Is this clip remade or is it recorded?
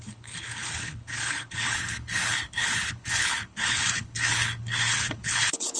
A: remade